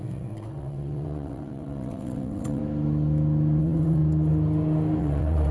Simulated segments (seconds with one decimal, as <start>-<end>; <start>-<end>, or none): 0.0-2.6; 3.6-4.0; 5.0-5.5